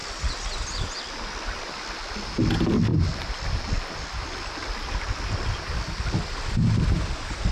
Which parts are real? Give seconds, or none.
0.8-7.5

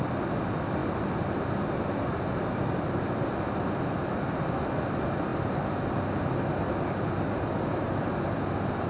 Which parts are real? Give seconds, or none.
0.0-8.9